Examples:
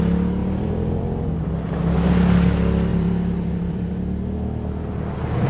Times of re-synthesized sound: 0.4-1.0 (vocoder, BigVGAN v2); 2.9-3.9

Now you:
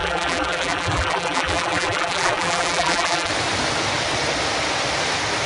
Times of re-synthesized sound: 0.0-3.3 (vocoder, BigVGAN v2)

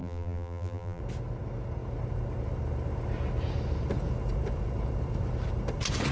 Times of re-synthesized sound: 0.0-1.0 (vocoder, BigVGAN v2)

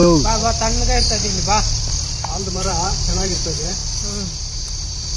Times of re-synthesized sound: 2.2-3.8 (vocoder, BigVGAN v2); 4.4-5.2

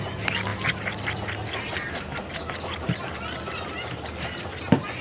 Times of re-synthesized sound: 0.0-0.5 (vocoder, BigVGAN v2); 3.5-5.0

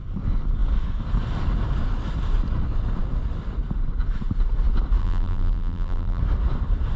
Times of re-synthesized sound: 5.0-6.2 (vocoder, BigVGAN v2)